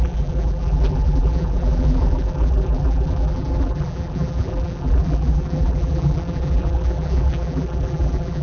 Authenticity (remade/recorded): remade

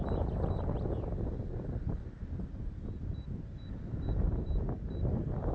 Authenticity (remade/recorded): recorded